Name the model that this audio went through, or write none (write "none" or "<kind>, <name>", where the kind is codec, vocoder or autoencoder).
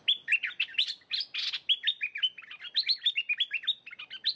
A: none